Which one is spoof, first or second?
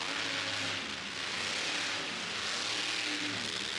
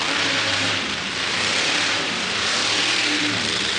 second